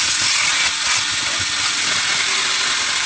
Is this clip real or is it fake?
real